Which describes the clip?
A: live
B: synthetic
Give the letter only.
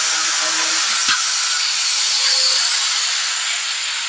A